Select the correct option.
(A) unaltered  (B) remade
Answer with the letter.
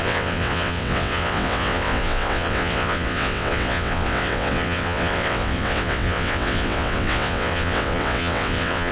B